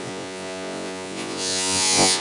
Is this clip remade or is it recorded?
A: remade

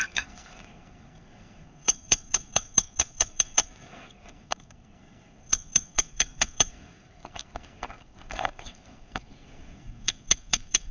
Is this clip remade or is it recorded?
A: remade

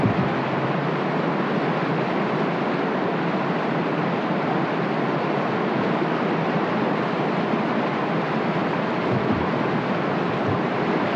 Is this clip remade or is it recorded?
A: recorded